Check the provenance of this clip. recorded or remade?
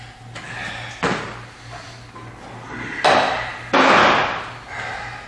recorded